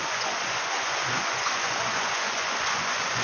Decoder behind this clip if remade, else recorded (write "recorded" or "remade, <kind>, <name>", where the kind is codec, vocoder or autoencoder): remade, vocoder, Vocos